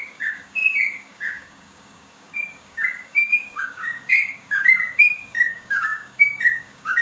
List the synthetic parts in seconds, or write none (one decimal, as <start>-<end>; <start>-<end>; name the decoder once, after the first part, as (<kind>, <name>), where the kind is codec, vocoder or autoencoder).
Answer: 0.0-7.0 (codec, DAC)